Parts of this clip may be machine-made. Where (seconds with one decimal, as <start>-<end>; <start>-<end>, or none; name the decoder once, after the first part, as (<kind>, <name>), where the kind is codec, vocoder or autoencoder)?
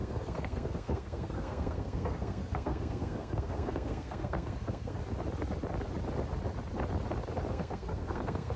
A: 0.0-5.0 (codec, SNAC); 7.5-8.6